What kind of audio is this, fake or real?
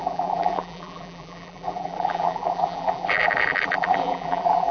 fake